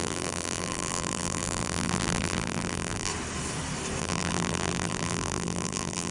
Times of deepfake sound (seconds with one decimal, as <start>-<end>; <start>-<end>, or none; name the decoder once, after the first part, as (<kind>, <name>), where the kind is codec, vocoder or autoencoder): 0.0-3.1 (vocoder, BigVGAN v2); 4.0-6.1